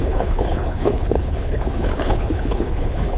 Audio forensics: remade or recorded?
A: remade